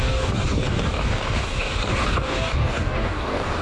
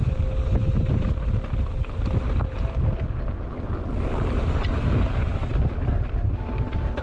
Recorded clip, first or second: second